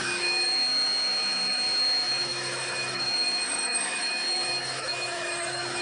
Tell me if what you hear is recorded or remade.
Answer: remade